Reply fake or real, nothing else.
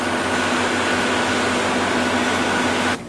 real